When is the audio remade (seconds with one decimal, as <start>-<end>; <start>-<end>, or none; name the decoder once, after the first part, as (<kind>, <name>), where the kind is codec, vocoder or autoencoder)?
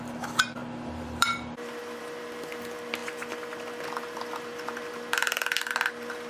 0.0-3.0 (vocoder, BigVGAN v2); 4.0-6.3